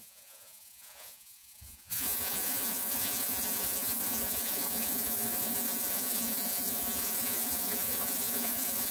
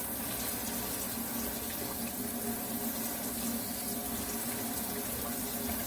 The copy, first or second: first